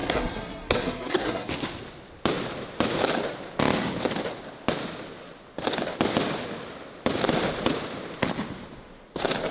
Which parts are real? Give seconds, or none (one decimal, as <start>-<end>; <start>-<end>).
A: 1.5-9.5